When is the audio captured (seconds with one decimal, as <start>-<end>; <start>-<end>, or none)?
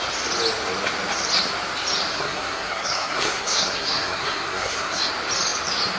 0.0-2.1; 5.1-6.0